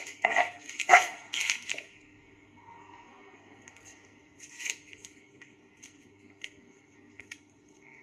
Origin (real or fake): fake